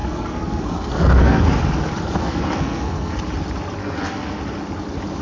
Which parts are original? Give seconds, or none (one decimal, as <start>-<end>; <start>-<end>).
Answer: 1.4-2.2; 3.2-3.8; 4.4-5.2